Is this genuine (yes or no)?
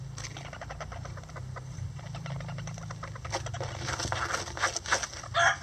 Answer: yes